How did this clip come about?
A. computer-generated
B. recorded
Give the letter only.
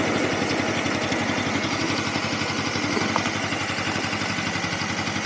B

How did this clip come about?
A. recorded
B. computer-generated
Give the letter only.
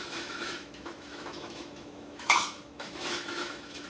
B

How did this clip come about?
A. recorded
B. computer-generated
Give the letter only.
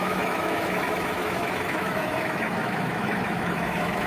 B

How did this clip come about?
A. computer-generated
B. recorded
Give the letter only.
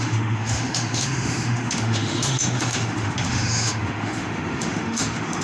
A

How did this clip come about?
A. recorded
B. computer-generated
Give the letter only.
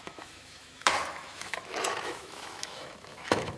B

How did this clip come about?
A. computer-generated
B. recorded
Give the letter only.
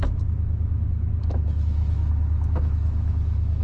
A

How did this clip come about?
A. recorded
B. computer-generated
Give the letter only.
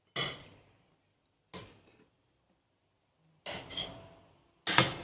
A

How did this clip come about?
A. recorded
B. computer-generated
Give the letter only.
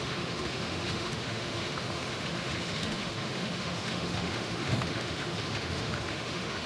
B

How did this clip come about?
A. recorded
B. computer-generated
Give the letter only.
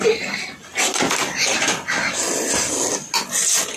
A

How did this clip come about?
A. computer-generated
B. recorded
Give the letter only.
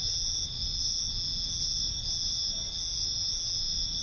B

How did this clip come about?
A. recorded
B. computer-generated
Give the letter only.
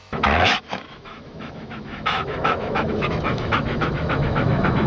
B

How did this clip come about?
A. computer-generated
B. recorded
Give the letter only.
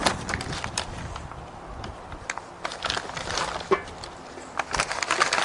B